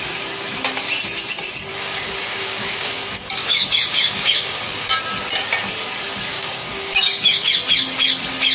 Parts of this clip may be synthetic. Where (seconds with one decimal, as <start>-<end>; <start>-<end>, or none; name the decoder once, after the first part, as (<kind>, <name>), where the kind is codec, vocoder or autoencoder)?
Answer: 1.7-5.0 (codec, DAC); 6.3-7.5